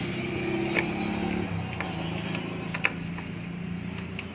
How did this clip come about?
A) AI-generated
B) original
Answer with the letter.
B